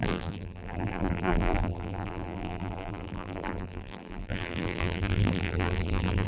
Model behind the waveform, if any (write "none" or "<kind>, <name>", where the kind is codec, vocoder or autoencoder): vocoder, BigVGAN v2